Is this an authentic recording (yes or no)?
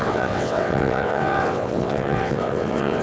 no